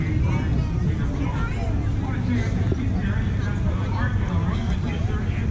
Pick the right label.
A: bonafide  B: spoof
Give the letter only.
A